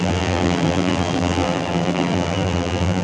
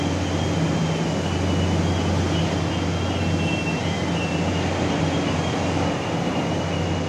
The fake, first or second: first